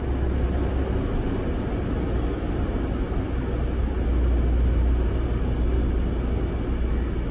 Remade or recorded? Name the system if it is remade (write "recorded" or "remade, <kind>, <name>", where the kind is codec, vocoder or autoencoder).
recorded